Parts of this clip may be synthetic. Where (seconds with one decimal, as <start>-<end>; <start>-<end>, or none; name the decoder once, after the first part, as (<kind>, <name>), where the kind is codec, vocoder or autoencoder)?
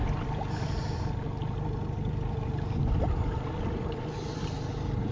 none